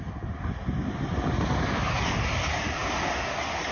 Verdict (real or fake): real